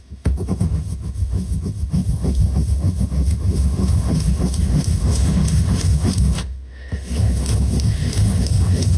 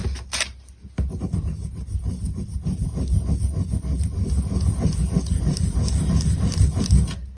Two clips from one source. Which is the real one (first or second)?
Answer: second